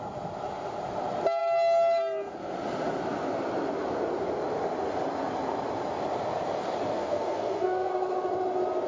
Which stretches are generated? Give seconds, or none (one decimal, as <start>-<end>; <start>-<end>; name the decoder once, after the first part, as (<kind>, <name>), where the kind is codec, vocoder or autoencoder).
6.9-7.9 (codec, SNAC)

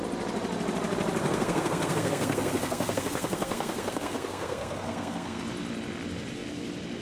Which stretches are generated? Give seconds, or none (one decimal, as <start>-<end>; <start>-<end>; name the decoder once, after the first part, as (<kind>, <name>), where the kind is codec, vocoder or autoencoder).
1.2-5.4 (codec, SNAC)

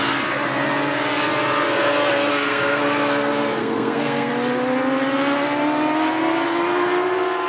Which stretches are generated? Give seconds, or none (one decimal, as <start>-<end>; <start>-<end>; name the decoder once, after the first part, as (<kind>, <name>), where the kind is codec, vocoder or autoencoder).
2.3-2.8 (codec, SNAC); 3.6-4.3

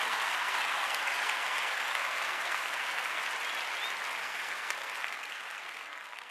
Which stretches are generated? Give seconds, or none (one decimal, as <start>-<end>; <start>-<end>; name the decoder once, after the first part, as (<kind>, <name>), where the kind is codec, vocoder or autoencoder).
0.0-3.2 (codec, SNAC); 4.2-6.3

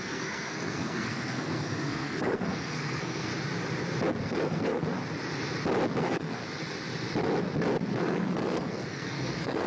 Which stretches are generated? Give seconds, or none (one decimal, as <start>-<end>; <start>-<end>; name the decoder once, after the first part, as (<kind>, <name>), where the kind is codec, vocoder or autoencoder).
0.0-3.3 (codec, SNAC); 4.2-4.8; 6.0-6.4; 7.9-9.7

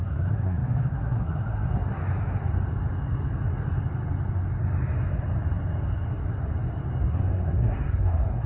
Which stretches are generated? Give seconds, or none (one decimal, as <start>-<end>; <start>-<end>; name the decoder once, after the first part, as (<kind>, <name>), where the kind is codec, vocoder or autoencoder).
0.0-2.0 (codec, SNAC); 7.1-8.5